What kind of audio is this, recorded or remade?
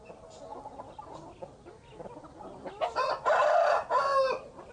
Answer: recorded